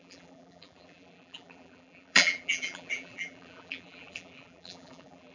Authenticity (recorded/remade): remade